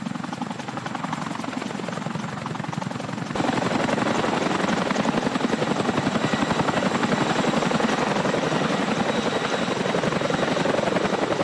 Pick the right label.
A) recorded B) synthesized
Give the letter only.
A